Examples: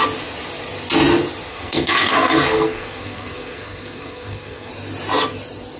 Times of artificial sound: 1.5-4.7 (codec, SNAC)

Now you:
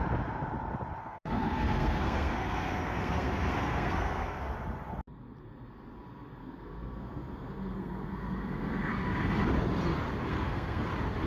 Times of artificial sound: 1.0-4.4 (codec, SNAC); 6.4-8.9; 10.3-10.9

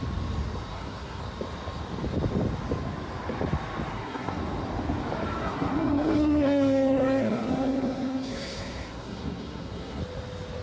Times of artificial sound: 0.7-1.2 (codec, SNAC); 3.9-4.4; 5.4-10.0

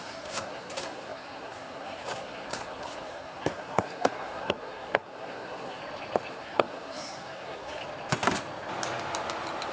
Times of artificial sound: 0.0-5.8 (codec, SNAC); 6.3-7.8

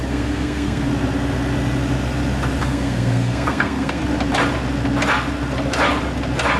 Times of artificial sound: 0.0-0.9 (codec, SNAC); 2.6-4.0